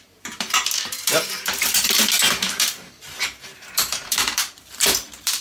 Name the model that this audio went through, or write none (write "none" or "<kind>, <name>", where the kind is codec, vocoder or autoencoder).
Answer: vocoder, BigVGAN v2